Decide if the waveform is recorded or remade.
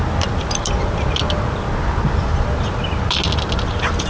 recorded